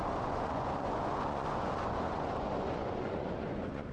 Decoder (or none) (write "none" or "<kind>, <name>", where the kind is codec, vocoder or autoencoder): vocoder, Vocos